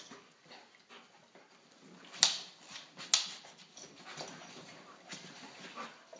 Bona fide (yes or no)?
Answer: yes